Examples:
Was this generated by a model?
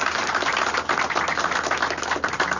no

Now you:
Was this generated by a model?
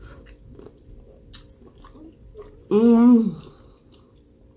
no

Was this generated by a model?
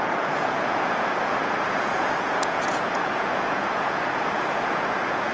yes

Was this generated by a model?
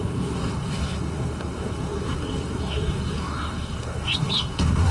yes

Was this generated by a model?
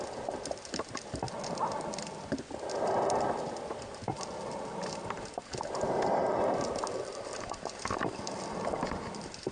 no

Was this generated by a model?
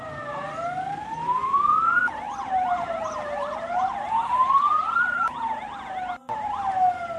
no